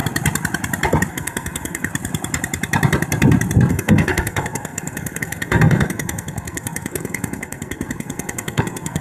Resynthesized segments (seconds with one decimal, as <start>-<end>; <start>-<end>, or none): 1.1-1.9; 3.7-9.0